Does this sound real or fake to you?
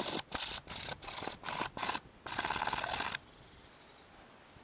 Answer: real